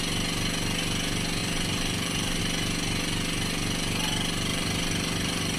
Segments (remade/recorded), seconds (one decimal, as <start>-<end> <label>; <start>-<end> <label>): 0.0-1.4 recorded; 1.4-2.4 remade; 2.4-4.5 recorded; 4.5-5.6 remade